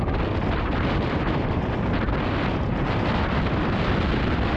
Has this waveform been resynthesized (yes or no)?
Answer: no